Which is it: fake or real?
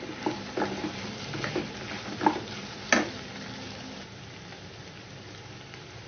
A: real